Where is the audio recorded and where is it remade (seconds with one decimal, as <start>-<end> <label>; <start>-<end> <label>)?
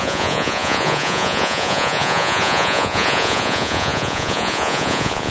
0.0-5.3 remade